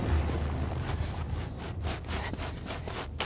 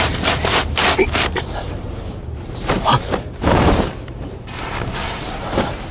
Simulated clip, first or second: second